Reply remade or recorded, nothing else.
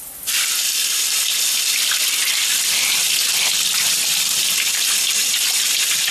recorded